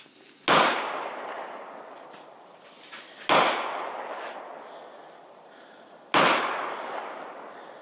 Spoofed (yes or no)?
no